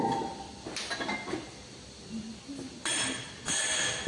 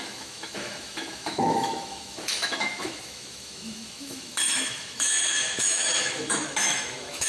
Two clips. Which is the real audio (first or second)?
first